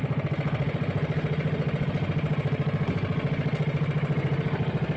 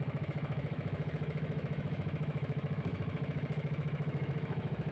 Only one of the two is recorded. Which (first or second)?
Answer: first